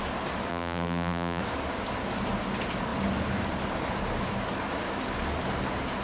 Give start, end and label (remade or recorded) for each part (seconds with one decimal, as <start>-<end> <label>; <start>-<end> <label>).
0.0-0.5 recorded; 0.5-1.4 remade; 1.4-6.0 recorded

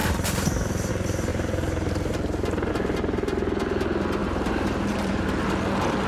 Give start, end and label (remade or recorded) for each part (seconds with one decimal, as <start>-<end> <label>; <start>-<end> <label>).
0.0-1.3 recorded; 1.3-2.7 remade; 2.7-4.2 recorded; 4.2-5.1 remade; 5.1-6.1 recorded

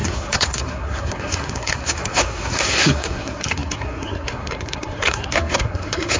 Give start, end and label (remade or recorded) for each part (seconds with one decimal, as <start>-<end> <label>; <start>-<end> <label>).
0.0-6.2 remade

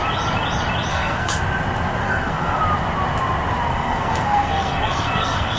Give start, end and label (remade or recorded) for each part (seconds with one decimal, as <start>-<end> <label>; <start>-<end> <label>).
0.0-0.9 recorded; 0.9-1.4 remade; 1.4-2.0 recorded; 2.0-2.6 remade; 2.6-3.7 recorded; 3.7-5.6 remade